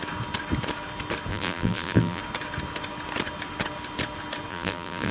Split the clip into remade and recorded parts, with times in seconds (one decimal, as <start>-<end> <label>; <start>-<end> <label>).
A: 0.0-1.3 recorded; 1.3-2.2 remade; 2.2-4.5 recorded; 4.5-5.1 remade